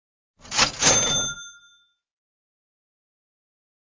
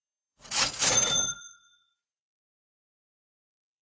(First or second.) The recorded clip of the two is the first